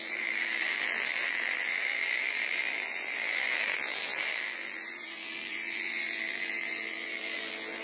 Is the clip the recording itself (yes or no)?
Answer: no